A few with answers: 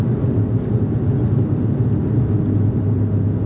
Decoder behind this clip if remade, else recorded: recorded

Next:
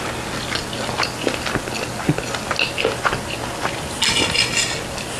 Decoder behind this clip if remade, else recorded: recorded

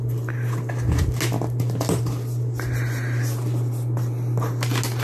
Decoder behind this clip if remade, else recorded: recorded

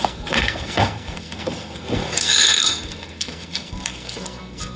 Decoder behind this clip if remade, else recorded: remade, codec, SNAC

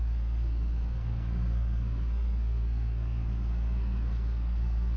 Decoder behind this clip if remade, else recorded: remade, codec, SNAC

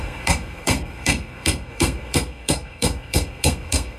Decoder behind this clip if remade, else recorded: remade, codec, SNAC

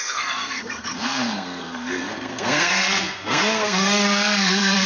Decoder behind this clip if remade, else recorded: remade, codec, SNAC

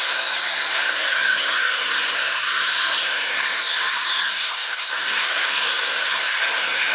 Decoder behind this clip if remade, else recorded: remade, codec, SNAC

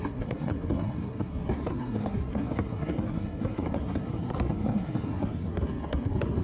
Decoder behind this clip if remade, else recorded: remade, codec, SNAC